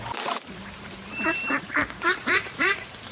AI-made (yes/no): yes